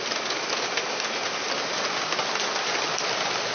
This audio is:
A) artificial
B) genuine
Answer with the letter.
B